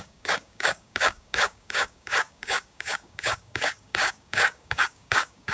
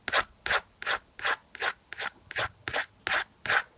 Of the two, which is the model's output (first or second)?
first